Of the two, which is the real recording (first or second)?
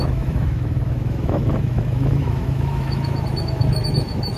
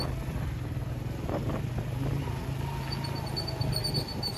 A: second